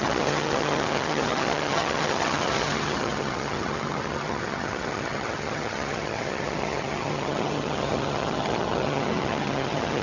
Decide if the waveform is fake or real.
fake